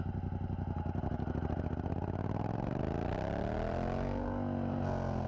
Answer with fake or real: real